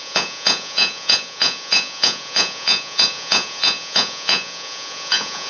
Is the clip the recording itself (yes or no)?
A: no